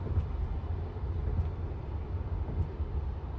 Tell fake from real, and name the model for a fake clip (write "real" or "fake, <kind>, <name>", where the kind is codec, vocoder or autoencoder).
real